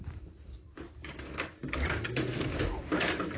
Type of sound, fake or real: fake